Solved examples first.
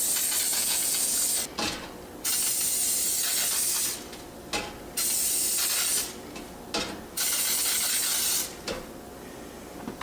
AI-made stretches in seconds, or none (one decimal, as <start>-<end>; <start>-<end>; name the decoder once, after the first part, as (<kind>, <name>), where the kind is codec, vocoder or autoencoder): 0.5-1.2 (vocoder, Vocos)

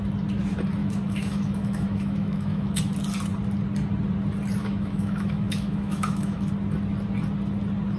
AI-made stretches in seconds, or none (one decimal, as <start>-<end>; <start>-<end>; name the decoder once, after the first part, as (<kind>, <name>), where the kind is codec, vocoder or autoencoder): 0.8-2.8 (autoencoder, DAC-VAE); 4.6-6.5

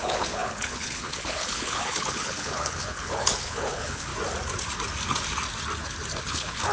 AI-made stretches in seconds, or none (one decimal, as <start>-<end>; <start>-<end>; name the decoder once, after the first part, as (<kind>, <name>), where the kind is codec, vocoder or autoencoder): 0.0-4.1 (codec, HILCodec); 6.2-6.7

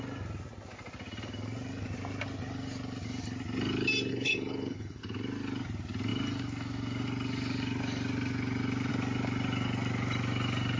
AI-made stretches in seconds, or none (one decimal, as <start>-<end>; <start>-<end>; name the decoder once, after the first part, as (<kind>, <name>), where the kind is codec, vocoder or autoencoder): 4.1-5.0 (codec, HILCodec)

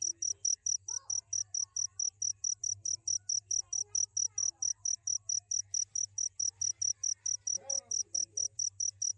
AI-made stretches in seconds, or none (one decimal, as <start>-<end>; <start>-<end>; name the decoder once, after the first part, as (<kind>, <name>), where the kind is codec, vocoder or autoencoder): none

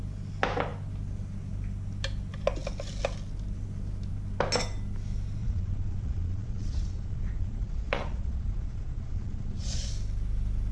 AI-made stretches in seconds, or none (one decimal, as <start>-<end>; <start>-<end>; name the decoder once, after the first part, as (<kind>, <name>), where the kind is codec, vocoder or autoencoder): 5.4-9.9 (vocoder, Vocos)

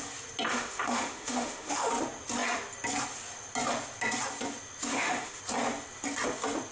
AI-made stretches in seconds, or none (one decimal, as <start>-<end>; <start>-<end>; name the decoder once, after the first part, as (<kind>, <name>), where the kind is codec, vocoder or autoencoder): 0.5-1.9 (autoencoder, DAC-VAE); 4.9-5.4

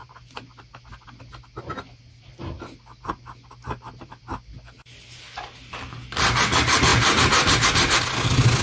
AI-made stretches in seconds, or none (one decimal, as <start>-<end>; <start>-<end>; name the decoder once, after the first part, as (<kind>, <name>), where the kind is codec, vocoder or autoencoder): none